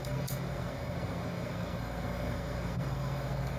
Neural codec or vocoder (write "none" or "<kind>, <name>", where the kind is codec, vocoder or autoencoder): codec, SNAC